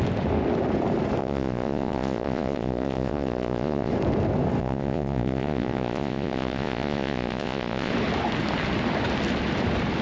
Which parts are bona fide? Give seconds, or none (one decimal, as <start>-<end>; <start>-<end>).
0.0-1.2; 3.9-4.6; 7.9-10.0